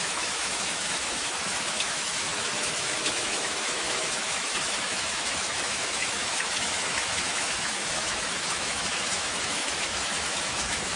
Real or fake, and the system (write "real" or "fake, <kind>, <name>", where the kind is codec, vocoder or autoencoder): fake, autoencoder, DAC-VAE